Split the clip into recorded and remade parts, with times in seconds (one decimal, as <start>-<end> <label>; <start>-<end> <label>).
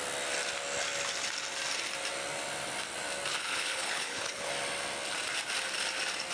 0.0-3.3 recorded; 3.3-4.5 remade; 4.5-6.3 recorded